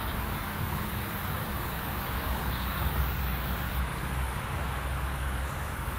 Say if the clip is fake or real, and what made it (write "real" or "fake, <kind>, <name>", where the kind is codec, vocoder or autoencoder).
fake, codec, DAC